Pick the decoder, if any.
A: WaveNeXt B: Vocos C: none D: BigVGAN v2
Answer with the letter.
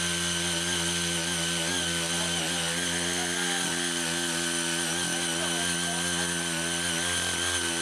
C